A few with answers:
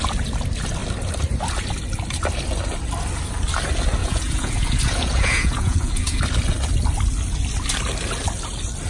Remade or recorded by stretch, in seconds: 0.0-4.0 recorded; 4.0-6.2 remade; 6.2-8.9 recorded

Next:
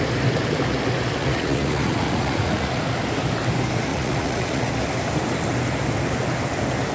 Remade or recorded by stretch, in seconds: 0.0-1.2 recorded; 1.2-2.8 remade; 2.8-3.9 recorded; 3.9-4.7 remade; 4.7-6.9 recorded

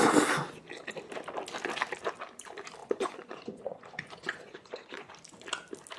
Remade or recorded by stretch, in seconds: 0.0-2.8 recorded; 2.8-5.1 remade; 5.1-6.0 recorded

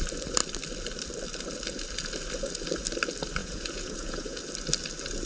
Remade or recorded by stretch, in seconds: 0.0-3.4 recorded; 3.4-4.4 remade; 4.4-5.3 recorded

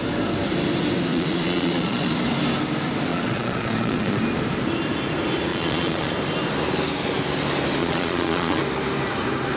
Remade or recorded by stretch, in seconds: 0.0-1.1 recorded; 1.1-2.1 remade; 2.1-3.1 recorded; 3.1-4.2 remade; 4.2-5.5 recorded; 5.5-6.1 remade; 6.1-7.8 recorded; 7.8-8.6 remade; 8.6-9.6 recorded